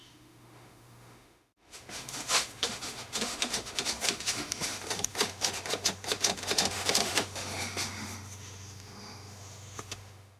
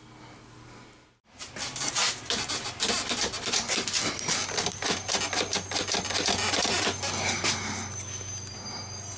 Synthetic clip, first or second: first